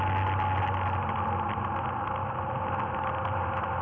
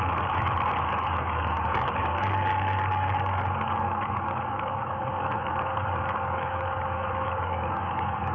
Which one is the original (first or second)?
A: first